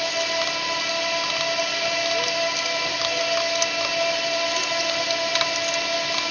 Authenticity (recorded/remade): recorded